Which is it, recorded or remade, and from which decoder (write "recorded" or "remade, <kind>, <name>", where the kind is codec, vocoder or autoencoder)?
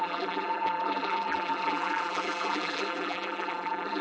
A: remade, vocoder, BigVGAN v2